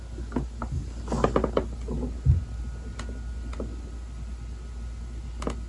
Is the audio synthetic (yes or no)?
no